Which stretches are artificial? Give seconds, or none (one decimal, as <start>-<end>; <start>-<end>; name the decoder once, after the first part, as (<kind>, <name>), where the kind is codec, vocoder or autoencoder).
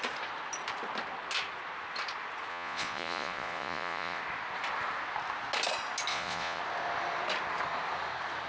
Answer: 2.5-4.2 (vocoder, Vocos); 6.1-6.6